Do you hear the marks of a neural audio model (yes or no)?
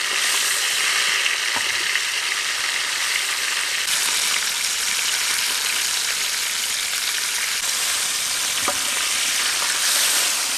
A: no